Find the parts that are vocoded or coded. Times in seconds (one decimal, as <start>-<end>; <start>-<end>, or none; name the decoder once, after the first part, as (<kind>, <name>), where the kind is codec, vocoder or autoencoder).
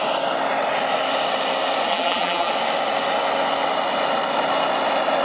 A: 1.9-2.5 (vocoder, BigVGAN v2)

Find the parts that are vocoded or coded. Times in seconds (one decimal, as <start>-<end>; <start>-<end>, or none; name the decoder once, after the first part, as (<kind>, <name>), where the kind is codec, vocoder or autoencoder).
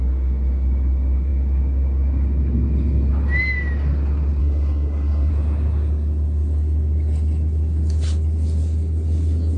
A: 4.4-5.3 (codec, SNAC)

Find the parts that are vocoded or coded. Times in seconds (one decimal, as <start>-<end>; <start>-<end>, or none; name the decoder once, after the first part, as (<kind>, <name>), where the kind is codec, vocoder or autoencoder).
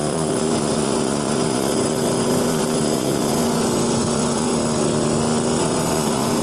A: 0.0-4.5 (vocoder, Vocos); 5.6-6.4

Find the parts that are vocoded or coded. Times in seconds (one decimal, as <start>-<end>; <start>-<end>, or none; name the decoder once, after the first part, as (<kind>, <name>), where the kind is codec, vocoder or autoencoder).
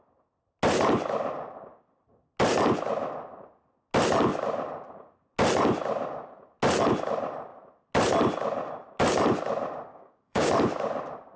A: 9.9-10.5 (codec, DAC)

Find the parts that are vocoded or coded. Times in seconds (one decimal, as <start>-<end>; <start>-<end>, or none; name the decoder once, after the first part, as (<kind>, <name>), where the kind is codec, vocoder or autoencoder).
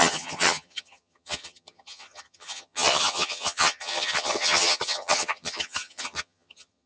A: 0.0-6.9 (vocoder, HiFi-GAN)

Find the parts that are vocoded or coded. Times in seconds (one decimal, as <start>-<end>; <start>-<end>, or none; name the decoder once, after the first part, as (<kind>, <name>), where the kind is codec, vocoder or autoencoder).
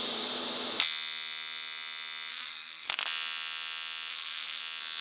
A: 2.3-2.9 (codec, SNAC); 4.1-4.6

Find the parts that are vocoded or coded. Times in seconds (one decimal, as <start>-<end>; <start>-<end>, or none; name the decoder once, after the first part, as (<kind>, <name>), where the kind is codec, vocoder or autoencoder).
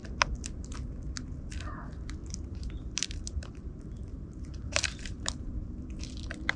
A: 2.2-5.8 (vocoder, BigVGAN v2)